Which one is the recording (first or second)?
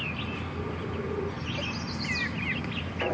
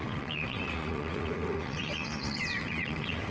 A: first